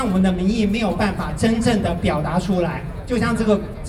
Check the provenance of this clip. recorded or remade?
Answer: remade